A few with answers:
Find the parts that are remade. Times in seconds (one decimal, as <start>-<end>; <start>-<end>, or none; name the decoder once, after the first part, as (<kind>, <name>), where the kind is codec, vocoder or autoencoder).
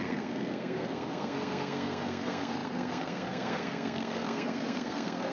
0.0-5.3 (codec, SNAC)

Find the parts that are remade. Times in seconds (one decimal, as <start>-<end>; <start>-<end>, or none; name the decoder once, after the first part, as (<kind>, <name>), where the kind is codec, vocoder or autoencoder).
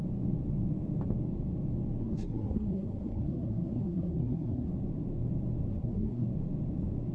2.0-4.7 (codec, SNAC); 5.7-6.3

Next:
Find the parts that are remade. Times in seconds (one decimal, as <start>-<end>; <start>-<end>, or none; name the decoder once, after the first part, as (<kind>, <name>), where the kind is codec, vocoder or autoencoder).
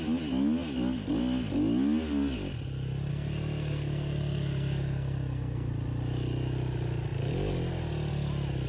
3.1-5.7 (codec, SNAC)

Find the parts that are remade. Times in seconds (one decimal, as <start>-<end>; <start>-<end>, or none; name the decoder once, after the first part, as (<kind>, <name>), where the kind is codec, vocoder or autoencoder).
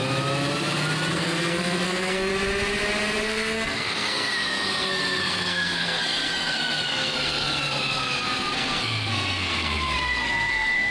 1.1-2.3 (codec, SNAC); 3.2-10.9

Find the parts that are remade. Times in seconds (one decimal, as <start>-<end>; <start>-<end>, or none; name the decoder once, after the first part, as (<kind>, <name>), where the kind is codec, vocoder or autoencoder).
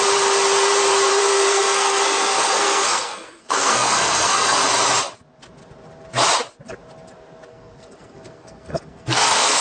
1.1-4.6 (codec, SNAC); 7.5-9.6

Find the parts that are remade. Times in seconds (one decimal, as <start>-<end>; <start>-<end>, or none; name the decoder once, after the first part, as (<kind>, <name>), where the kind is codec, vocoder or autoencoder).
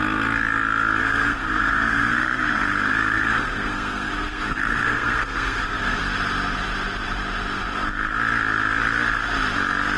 1.0-6.0 (codec, SNAC)